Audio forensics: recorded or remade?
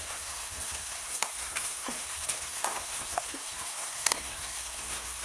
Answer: remade